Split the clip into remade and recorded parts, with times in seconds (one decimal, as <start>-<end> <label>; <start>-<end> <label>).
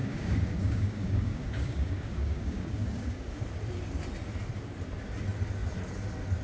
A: 0.0-3.4 remade; 3.4-6.4 recorded